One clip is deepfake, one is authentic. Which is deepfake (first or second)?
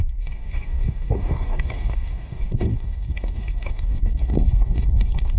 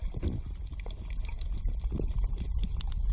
first